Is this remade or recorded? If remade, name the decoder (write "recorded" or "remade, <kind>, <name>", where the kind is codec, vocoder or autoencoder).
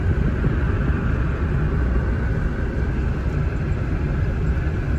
recorded